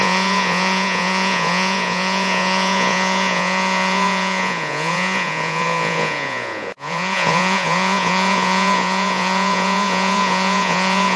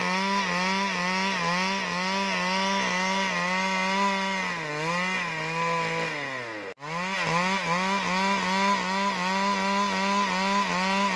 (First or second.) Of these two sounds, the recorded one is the second